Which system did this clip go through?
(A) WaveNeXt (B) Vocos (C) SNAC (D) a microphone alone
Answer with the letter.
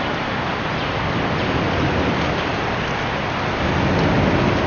D